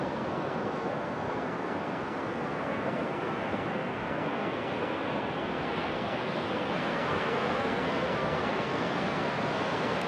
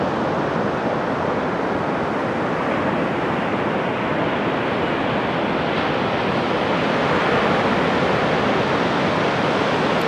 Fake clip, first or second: first